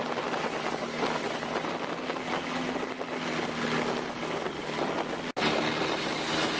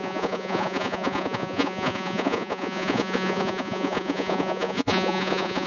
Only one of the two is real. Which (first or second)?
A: first